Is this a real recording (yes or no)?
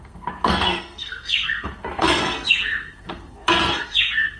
no